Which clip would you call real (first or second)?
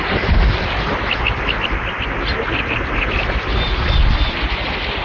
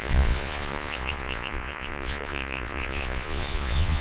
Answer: first